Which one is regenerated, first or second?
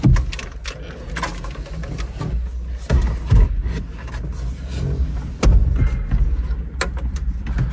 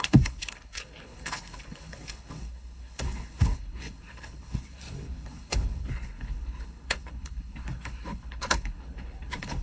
second